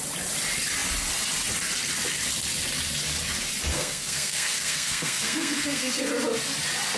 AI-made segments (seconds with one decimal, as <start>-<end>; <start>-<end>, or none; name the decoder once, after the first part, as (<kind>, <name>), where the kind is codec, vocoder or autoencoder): 3.7-5.9 (codec, SNAC)